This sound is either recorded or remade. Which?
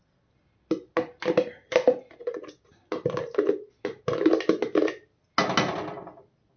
recorded